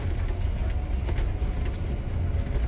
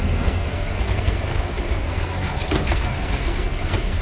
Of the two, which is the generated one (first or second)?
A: second